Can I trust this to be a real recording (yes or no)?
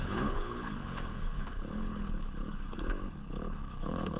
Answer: no